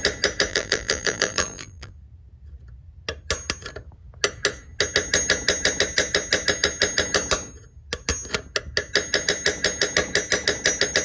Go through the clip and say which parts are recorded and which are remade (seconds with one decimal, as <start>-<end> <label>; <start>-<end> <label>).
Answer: 0.0-0.5 recorded; 0.5-1.9 remade; 1.9-11.0 recorded